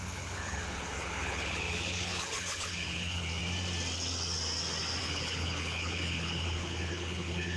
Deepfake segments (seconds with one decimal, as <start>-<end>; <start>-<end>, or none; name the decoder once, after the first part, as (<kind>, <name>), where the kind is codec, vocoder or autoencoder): 0.0-3.4 (codec, HILCodec); 5.0-7.6

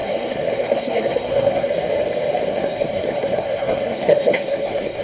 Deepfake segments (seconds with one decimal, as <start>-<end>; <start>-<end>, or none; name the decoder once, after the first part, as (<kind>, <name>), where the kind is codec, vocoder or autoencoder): 0.0-1.7 (codec, SNAC); 2.5-5.0

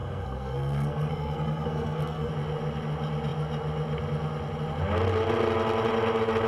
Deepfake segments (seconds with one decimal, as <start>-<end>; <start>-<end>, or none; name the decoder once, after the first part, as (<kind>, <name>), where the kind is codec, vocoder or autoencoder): 0.0-2.3 (codec, SNAC)

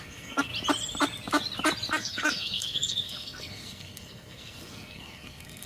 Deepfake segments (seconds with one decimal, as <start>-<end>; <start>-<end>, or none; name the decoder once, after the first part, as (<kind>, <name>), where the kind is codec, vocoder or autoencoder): 0.0-0.5 (codec, SNAC); 1.9-5.7

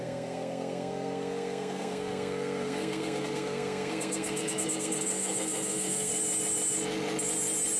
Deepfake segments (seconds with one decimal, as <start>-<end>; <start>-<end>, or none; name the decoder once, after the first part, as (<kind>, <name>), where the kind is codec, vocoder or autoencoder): 0.0-6.1 (codec, SNAC)